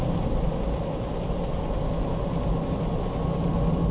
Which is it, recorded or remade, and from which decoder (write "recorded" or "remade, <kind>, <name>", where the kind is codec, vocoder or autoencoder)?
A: recorded